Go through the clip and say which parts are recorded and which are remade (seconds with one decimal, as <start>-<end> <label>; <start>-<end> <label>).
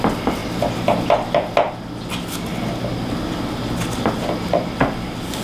0.0-5.4 recorded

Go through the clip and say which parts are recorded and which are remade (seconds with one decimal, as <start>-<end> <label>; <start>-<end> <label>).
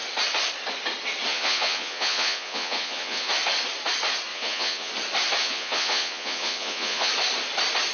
0.0-1.3 recorded; 1.3-3.3 remade; 3.3-4.3 recorded; 4.3-4.9 remade; 4.9-5.4 recorded; 5.4-7.1 remade; 7.1-7.9 recorded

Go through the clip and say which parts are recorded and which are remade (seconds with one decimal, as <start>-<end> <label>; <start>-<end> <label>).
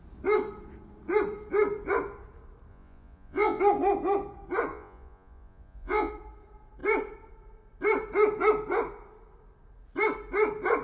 0.0-2.7 recorded; 2.7-3.6 remade; 3.6-4.7 recorded; 4.7-6.1 remade; 6.1-10.8 recorded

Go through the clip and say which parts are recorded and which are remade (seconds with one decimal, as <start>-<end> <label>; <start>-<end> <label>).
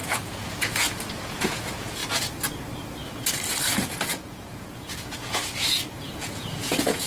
0.0-2.0 remade; 2.0-3.8 recorded; 3.8-5.4 remade; 5.4-6.0 recorded; 6.0-7.1 remade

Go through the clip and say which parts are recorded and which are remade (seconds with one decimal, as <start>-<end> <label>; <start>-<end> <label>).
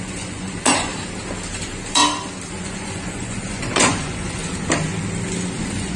0.0-0.9 remade; 0.9-1.6 recorded; 1.6-2.0 remade; 2.0-2.5 recorded; 2.5-4.4 remade; 4.4-5.6 recorded; 5.6-6.0 remade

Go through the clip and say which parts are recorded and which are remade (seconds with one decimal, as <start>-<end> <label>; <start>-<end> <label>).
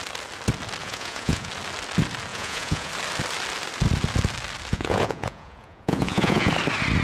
0.0-0.8 recorded; 0.8-1.5 remade; 1.5-2.3 recorded; 2.3-2.9 remade; 2.9-4.7 recorded; 4.7-6.5 remade; 6.5-7.0 recorded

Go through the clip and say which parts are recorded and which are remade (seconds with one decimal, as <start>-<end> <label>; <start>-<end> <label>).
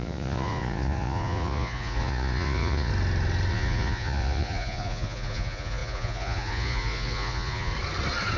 0.0-2.9 remade; 2.9-3.5 recorded; 3.5-7.7 remade; 7.7-8.4 recorded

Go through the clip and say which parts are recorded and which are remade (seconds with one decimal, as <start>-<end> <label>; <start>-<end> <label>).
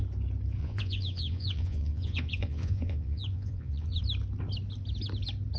0.0-0.6 recorded; 0.6-4.0 remade; 4.0-5.6 recorded